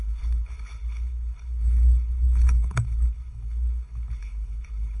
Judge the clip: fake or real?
fake